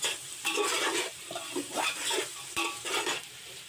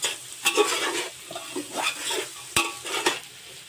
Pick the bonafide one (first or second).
second